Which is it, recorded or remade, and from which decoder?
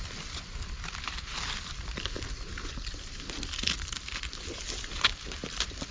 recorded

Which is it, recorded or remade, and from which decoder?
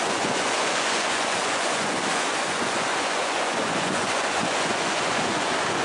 remade, vocoder, Vocos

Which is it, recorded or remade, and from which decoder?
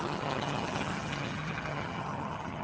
remade, vocoder, HiFi-GAN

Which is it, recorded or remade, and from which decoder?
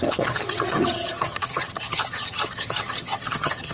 remade, vocoder, HiFi-GAN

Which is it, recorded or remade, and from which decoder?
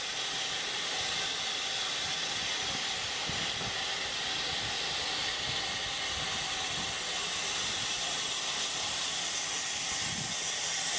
recorded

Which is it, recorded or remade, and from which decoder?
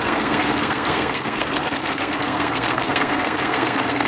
remade, codec, SNAC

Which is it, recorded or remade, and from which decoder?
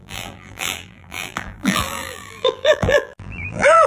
remade, vocoder, BigVGAN v2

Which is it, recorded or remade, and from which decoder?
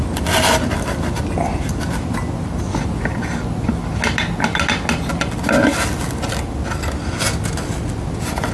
recorded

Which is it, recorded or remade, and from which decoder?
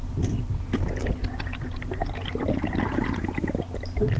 recorded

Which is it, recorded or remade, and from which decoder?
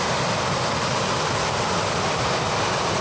recorded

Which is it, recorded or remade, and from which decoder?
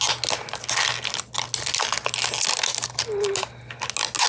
recorded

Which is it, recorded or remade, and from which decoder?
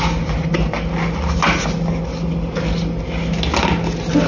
recorded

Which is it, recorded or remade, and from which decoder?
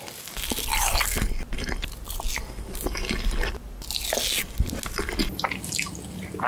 recorded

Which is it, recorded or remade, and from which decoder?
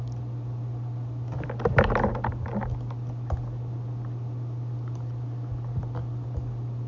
recorded